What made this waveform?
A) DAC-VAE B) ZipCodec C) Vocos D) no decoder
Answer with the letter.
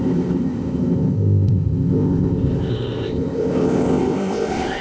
B